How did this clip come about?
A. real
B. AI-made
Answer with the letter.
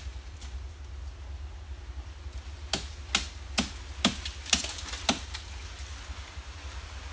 A